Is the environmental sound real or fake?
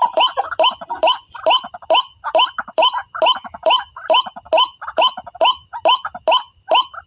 real